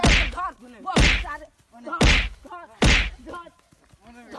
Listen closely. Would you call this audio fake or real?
real